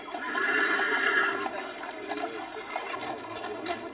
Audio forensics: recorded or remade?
remade